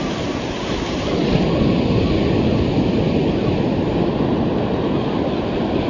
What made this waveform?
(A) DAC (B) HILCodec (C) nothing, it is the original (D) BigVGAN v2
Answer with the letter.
C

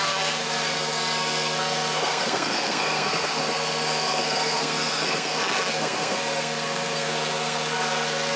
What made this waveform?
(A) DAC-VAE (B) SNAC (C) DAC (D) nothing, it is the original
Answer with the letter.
B